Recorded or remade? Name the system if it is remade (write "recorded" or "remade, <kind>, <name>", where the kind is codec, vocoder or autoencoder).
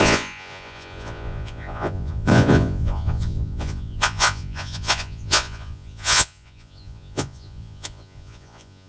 remade, vocoder, Vocos